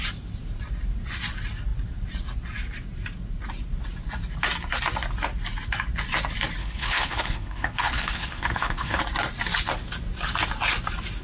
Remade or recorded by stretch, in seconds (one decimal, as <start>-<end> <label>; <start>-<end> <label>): 0.0-6.6 recorded; 6.6-9.0 remade; 9.0-11.2 recorded